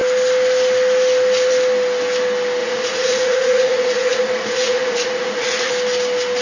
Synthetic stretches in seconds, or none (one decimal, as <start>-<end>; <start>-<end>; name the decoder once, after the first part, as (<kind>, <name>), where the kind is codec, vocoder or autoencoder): 2.6-5.7 (vocoder, Vocos)